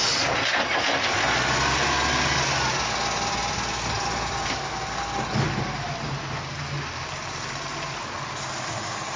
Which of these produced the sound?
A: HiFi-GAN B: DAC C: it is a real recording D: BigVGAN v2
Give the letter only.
C